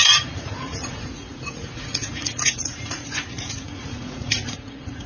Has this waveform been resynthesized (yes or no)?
yes